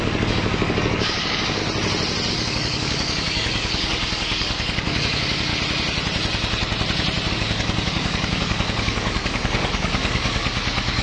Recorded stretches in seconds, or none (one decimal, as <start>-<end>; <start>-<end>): 1.6-2.3; 5.5-7.3